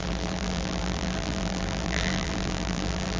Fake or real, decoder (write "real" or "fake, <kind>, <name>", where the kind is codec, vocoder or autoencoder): fake, vocoder, BigVGAN v2